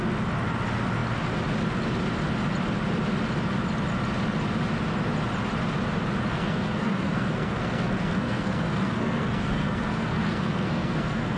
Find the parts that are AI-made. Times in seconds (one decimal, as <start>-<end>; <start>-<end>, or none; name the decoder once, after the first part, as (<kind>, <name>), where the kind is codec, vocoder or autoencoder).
6.3-11.4 (codec, SNAC)